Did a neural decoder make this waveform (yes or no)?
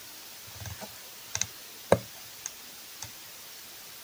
no